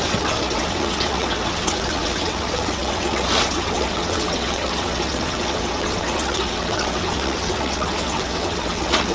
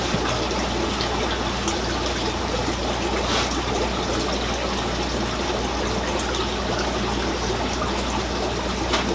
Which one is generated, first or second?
first